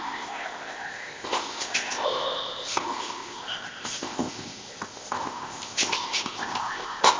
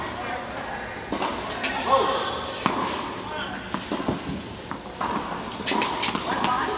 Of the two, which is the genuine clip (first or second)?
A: second